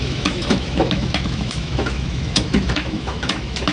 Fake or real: fake